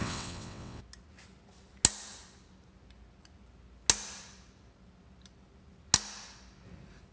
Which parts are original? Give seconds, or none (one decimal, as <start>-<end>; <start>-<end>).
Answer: 0.8-7.1